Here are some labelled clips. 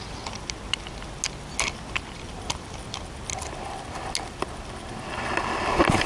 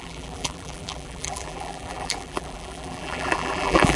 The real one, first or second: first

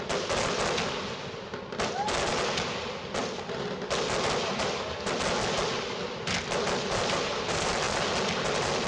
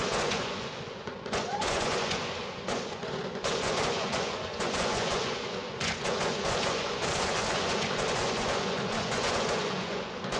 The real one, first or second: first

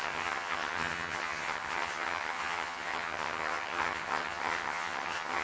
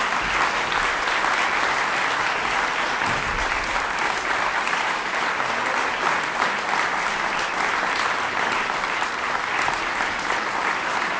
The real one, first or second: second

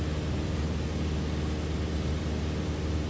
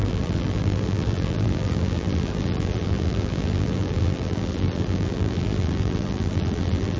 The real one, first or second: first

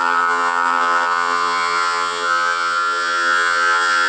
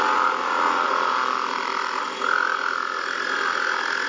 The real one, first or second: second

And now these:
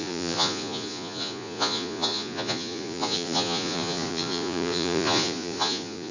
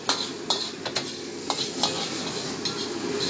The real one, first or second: second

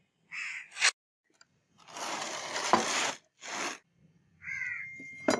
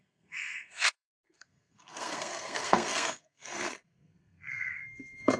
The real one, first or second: first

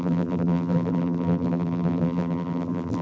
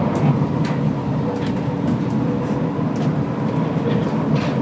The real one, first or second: second